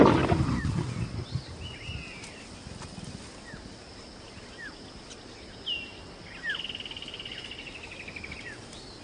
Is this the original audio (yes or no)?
yes